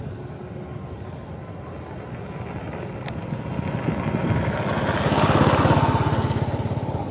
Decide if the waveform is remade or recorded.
recorded